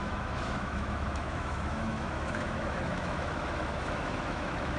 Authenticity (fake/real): fake